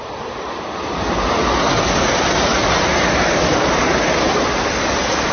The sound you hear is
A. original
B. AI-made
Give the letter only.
A